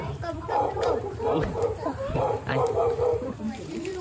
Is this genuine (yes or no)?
no